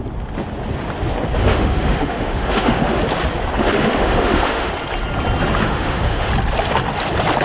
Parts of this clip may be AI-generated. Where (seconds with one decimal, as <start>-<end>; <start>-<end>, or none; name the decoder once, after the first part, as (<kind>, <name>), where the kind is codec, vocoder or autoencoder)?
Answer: 1.4-3.0 (autoencoder, DAC-VAE); 3.6-4.7; 5.6-6.3